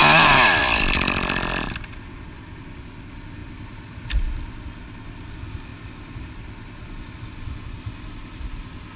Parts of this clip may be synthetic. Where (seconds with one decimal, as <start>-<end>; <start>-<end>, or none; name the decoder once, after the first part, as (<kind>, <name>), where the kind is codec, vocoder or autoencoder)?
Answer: none